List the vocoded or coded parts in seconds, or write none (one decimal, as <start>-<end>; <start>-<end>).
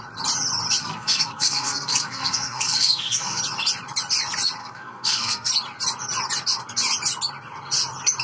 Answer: 0.8-3.4; 4.6-5.5